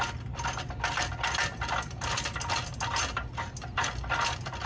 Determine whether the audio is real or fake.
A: real